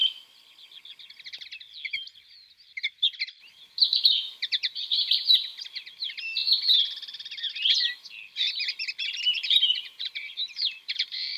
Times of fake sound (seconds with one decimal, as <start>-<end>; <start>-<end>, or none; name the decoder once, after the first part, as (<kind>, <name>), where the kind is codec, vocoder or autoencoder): 3.5-6.4 (vocoder, BigVGAN v2); 9.2-11.4